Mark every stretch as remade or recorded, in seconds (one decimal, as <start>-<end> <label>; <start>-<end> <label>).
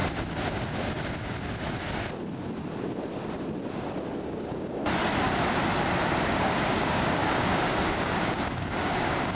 0.0-4.2 recorded; 4.2-4.8 remade; 4.8-6.4 recorded; 6.4-9.3 remade